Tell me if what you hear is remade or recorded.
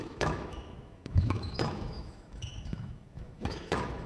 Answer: remade